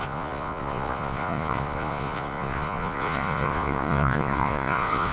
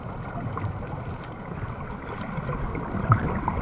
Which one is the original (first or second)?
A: second